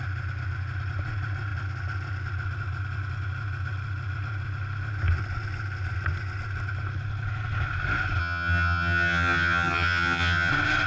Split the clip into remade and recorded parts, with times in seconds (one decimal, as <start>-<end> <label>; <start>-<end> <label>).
0.0-8.2 recorded; 8.2-10.5 remade; 10.5-10.9 recorded